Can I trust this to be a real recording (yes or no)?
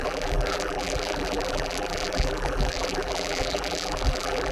no